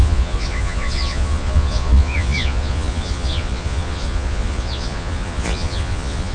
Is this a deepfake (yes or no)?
yes